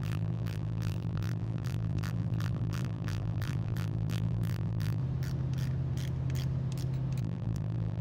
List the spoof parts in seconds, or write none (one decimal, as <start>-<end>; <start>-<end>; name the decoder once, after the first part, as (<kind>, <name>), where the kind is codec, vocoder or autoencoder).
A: 0.0-5.0 (vocoder, BigVGAN v2); 7.2-8.0